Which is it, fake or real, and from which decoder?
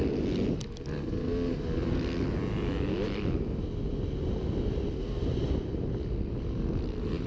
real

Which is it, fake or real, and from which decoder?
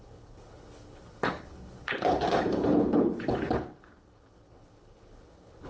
fake, codec, HILCodec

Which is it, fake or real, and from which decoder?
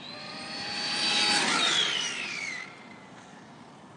real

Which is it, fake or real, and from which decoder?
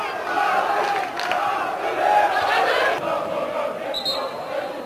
real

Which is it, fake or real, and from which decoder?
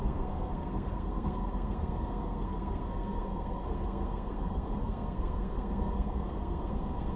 fake, codec, SNAC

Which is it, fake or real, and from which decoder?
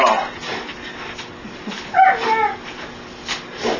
real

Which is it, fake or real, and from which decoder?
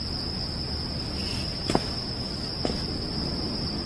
real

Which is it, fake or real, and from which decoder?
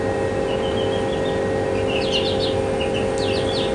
real